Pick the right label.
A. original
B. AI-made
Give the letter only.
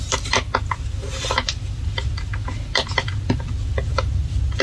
A